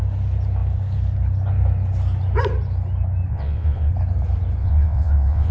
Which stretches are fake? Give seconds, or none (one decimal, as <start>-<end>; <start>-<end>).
3.3-3.9; 4.6-5.5